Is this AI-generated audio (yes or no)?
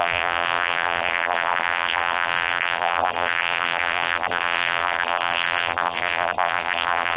yes